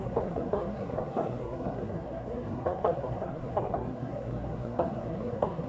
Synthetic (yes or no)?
yes